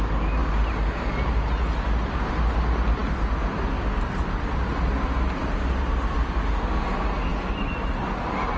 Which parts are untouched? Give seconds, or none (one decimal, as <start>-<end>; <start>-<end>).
0.0-8.6